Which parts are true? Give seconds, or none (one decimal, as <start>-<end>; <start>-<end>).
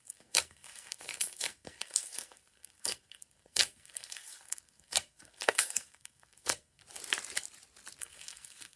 6.8-8.0